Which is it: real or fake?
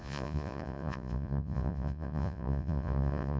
fake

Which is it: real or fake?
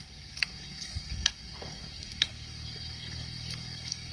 fake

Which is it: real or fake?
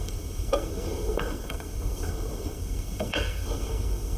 fake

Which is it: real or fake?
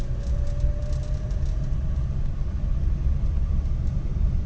real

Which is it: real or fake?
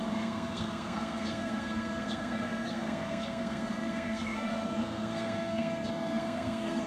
fake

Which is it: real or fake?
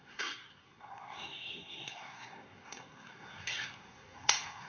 fake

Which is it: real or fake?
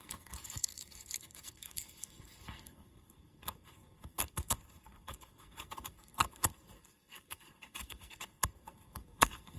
fake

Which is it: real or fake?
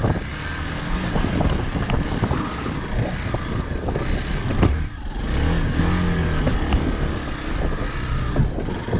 real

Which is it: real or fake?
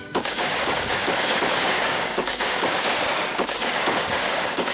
fake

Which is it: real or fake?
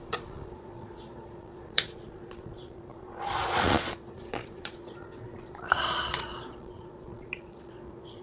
fake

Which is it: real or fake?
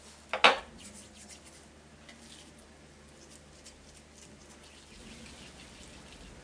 real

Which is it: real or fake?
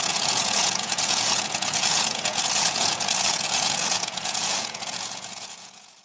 fake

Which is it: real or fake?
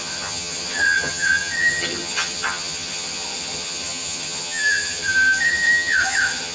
fake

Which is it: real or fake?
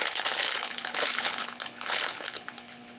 fake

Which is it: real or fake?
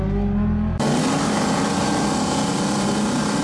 real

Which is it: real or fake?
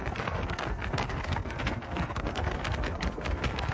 fake